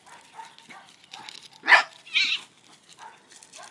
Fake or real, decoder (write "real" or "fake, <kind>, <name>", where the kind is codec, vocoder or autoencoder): real